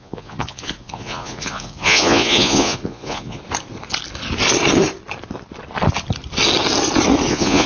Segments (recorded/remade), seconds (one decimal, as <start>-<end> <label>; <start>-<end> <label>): 0.0-3.4 remade; 3.4-7.3 recorded; 7.3-7.7 remade